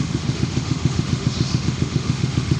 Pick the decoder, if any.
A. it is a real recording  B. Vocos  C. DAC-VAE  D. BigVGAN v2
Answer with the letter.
C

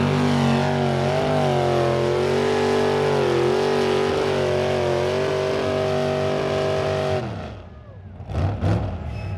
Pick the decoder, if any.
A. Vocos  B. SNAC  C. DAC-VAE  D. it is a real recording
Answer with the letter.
D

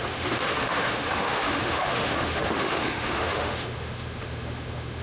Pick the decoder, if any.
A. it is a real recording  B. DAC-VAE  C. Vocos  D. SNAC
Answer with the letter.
B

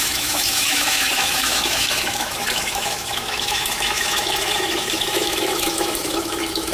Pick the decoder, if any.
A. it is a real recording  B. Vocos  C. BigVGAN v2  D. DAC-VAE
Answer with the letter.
D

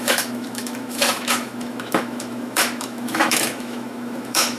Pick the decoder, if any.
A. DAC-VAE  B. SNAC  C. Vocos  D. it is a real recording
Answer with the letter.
A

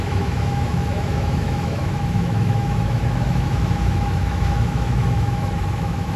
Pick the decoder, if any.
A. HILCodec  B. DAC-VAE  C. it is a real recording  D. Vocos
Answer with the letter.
B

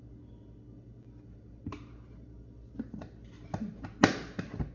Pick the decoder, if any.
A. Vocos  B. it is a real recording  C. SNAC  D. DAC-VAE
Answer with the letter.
B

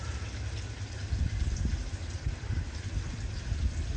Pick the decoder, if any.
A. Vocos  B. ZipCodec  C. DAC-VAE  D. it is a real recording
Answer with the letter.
D